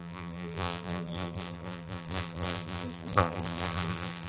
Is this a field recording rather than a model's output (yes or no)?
no